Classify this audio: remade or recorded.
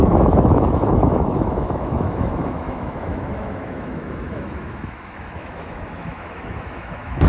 remade